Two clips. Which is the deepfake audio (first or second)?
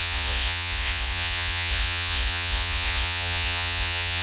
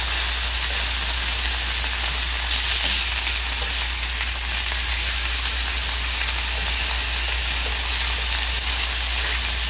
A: first